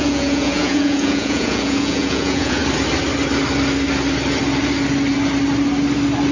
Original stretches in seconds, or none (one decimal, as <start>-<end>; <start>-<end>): 2.6-6.3